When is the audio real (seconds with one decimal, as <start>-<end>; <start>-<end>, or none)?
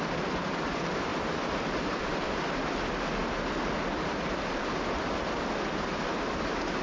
0.0-6.8